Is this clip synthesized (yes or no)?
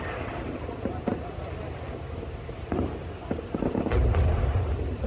no